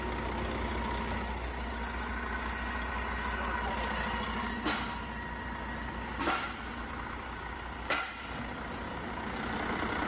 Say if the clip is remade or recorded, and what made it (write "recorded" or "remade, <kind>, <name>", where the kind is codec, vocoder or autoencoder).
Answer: recorded